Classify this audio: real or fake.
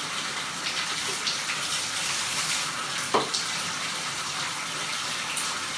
real